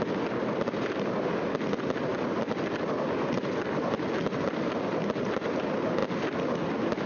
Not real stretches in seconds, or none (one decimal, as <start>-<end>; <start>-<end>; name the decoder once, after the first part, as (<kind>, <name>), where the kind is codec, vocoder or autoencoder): none